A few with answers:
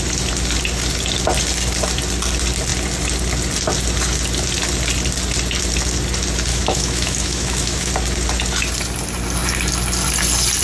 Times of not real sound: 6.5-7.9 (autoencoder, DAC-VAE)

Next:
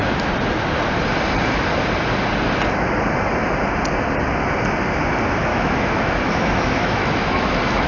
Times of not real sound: 5.5-7.9 (autoencoder, DAC-VAE)

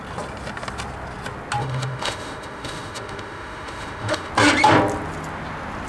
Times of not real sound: 1.6-4.3 (autoencoder, DAC-VAE)